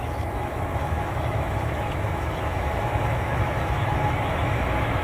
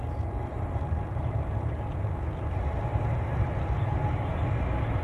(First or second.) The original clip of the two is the second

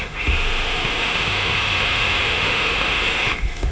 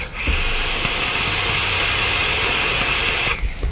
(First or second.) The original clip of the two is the second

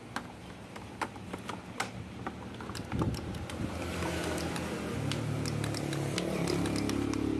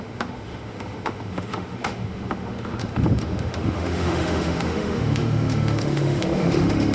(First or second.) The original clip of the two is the first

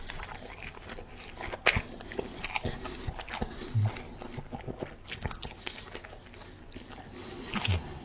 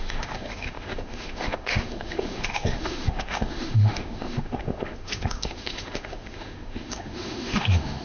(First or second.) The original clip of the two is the first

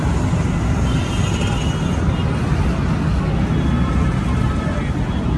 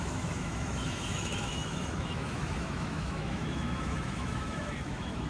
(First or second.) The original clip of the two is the first